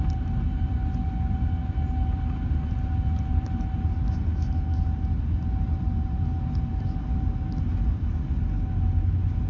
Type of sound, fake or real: real